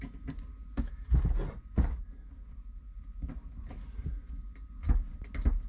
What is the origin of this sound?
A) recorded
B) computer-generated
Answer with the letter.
A